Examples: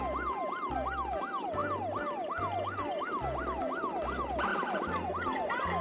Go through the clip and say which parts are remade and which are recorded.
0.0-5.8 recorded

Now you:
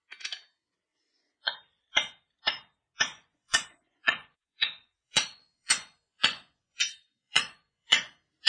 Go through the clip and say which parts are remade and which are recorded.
0.0-0.9 recorded; 0.9-1.6 remade; 1.6-3.1 recorded; 3.1-8.1 remade; 8.1-8.5 recorded

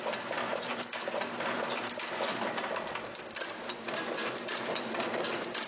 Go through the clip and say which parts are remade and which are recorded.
0.0-5.7 recorded